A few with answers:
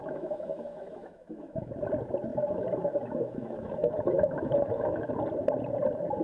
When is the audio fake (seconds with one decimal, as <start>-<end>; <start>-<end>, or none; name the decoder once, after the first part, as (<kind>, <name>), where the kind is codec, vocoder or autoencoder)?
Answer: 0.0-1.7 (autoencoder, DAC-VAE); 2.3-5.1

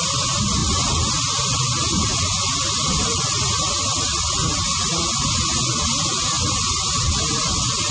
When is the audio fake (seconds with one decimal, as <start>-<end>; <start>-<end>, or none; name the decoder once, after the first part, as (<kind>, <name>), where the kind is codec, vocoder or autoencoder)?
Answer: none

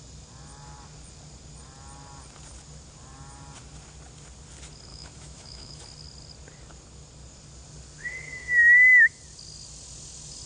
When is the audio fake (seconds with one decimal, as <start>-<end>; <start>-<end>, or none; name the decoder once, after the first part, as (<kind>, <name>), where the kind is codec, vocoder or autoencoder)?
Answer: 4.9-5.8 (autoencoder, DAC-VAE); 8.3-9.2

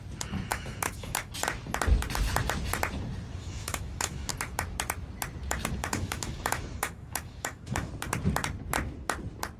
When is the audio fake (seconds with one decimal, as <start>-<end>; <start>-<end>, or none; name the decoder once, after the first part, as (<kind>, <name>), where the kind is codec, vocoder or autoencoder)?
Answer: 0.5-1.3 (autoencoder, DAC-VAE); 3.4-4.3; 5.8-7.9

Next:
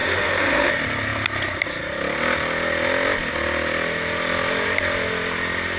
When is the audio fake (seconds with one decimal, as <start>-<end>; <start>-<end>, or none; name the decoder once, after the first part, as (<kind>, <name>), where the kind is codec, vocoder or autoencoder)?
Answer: 0.0-0.7 (autoencoder, DAC-VAE)

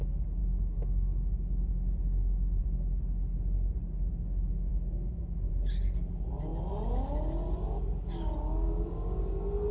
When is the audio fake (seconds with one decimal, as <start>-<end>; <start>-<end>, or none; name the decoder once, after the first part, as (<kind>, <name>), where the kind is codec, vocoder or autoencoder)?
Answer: 0.4-2.6 (autoencoder, DAC-VAE); 4.7-5.5